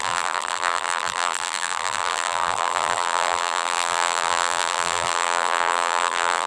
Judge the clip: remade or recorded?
remade